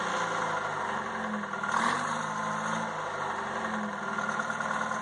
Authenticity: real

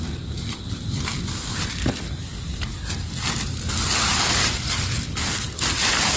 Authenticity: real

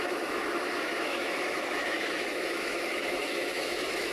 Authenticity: fake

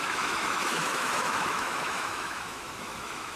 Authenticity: fake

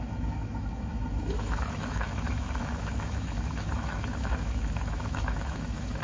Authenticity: fake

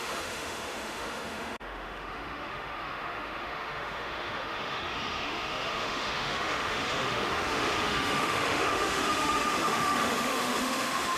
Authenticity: fake